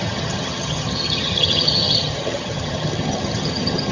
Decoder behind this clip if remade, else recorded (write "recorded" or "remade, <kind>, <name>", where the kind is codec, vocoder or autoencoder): remade, vocoder, HiFi-GAN